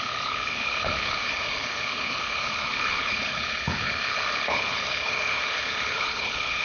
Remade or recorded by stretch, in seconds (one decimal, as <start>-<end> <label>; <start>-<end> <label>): 0.0-6.6 remade